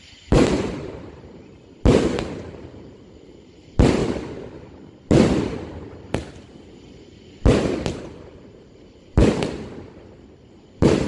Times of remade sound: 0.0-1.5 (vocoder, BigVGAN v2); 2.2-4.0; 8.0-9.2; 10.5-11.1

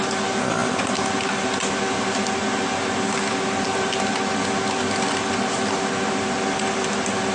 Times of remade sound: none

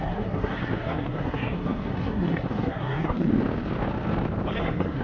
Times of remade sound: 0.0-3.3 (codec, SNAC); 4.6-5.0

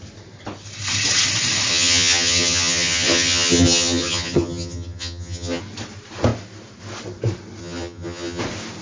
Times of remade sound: 1.7-5.6 (vocoder, HiFi-GAN); 7.6-8.4

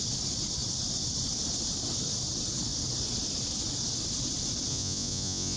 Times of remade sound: 4.7-5.6 (vocoder, Vocos)

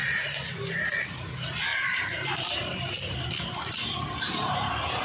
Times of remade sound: 0.0-1.0 (vocoder, BigVGAN v2); 1.7-5.0

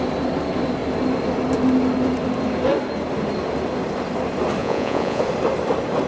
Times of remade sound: 4.6-5.2 (vocoder, Vocos)

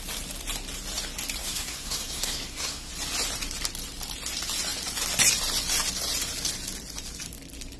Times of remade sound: 1.4-2.9 (codec, SNAC)